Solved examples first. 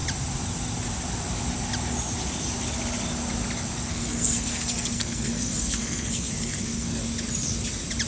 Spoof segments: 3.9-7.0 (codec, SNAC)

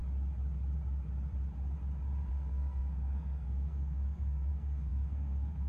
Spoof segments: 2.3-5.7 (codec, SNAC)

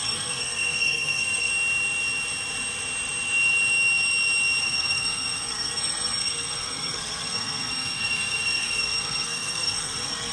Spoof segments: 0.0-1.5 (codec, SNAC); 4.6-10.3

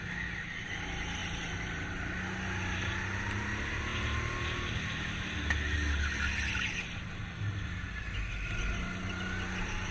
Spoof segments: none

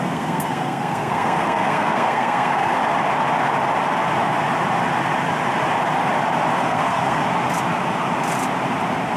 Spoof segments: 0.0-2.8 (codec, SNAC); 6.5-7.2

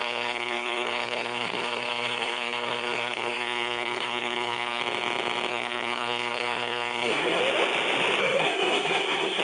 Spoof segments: 0.0-4.8 (codec, SNAC); 5.5-7.4; 8.2-9.4

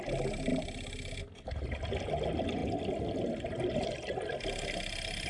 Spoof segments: none